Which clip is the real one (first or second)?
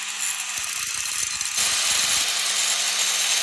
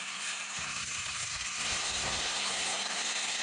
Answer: first